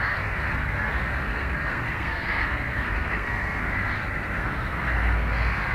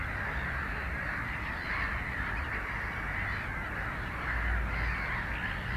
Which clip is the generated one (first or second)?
first